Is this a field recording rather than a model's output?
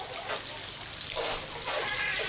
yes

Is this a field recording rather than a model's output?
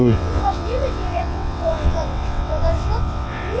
no